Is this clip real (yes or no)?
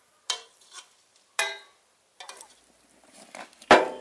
yes